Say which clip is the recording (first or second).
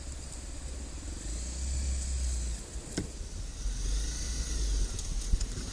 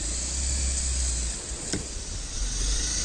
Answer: first